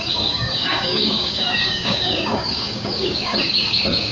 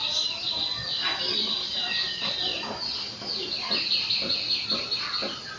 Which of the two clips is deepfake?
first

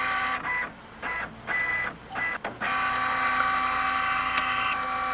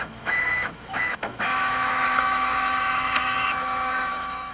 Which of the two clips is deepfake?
second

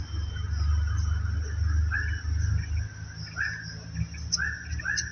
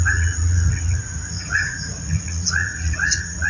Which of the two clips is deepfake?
second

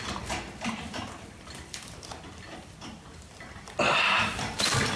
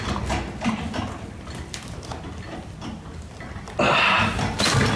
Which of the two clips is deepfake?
first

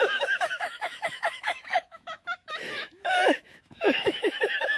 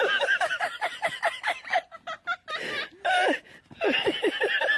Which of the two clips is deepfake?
first